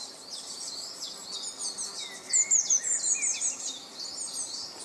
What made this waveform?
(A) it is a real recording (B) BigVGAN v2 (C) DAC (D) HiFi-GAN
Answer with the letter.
A